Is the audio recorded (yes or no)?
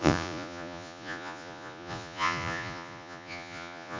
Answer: no